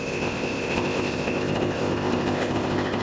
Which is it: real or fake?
fake